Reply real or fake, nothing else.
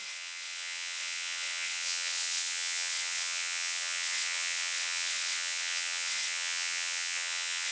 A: fake